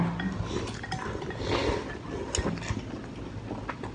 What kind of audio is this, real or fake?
real